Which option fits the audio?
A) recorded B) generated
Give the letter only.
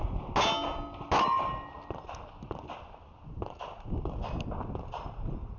A